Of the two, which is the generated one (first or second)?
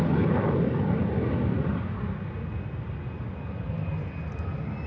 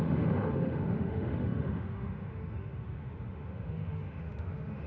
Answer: second